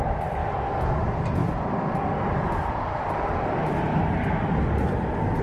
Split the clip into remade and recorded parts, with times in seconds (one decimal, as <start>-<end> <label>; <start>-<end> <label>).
0.0-5.4 recorded